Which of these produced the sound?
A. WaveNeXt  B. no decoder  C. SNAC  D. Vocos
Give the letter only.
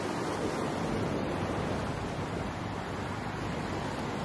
B